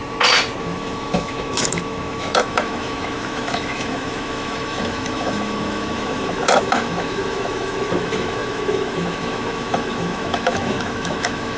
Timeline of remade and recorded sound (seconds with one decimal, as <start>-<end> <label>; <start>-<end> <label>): 0.0-0.6 recorded; 0.6-11.6 remade